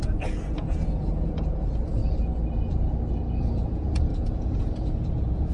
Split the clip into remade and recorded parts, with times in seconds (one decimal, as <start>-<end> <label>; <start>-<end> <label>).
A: 0.0-2.0 remade; 2.0-3.4 recorded; 3.4-5.5 remade